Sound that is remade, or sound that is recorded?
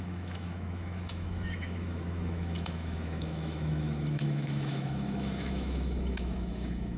remade